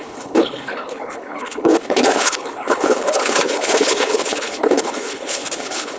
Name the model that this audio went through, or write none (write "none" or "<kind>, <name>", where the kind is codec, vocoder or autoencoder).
codec, HILCodec